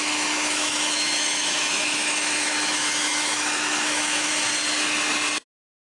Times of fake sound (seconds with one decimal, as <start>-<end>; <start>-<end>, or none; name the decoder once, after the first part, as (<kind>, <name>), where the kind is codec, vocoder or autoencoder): 0.0-4.3 (autoencoder, DAC-VAE)